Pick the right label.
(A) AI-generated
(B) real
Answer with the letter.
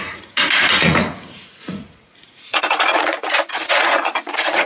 A